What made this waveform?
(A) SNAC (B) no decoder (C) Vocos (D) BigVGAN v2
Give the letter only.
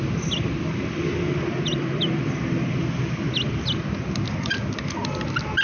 B